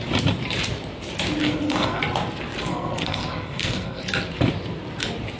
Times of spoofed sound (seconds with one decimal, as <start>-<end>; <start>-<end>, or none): 1.4-2.0; 2.7-4.0